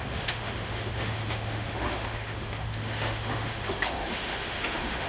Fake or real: fake